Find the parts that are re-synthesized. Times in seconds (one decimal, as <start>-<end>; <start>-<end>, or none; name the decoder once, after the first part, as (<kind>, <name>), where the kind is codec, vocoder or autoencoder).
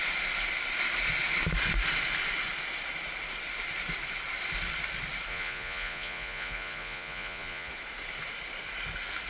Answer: 5.3-7.7 (vocoder, Vocos)